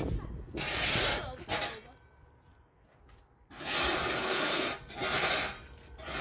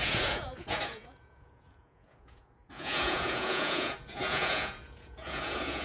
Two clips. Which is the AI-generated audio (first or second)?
second